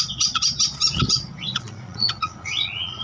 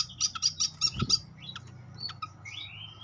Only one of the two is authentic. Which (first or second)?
second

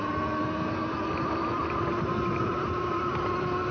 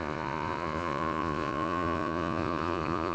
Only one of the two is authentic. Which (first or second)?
first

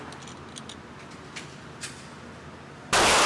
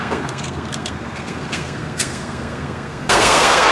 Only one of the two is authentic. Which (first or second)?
first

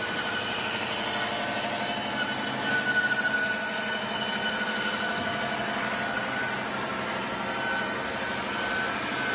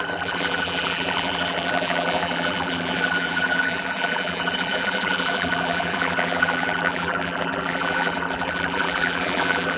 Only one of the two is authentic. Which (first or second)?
first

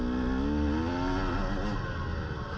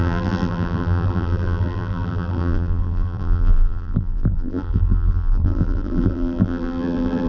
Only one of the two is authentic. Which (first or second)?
first